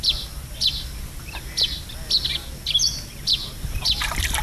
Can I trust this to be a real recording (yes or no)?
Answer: yes